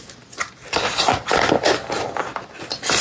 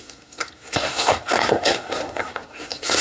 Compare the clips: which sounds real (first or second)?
first